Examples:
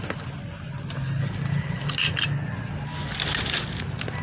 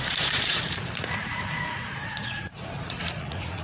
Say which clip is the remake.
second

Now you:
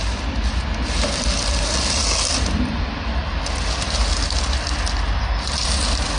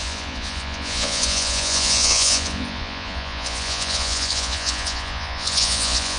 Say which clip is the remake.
second